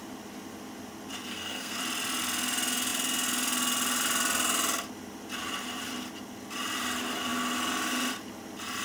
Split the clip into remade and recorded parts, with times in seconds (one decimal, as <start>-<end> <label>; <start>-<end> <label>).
0.0-1.3 recorded; 1.3-1.8 remade; 1.8-8.8 recorded